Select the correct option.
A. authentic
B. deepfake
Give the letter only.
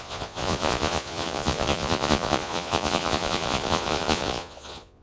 B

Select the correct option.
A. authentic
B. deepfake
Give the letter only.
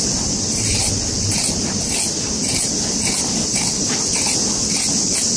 A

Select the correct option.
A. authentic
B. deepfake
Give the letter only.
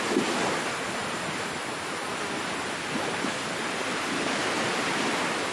A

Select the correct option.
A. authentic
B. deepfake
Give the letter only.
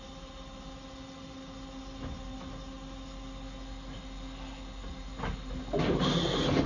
A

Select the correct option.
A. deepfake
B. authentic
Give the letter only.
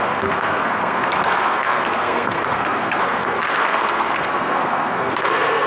A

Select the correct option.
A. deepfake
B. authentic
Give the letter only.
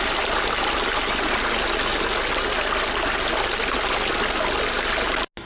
B